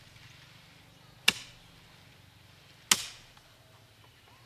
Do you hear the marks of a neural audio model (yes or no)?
no